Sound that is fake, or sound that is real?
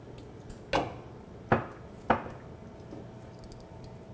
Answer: real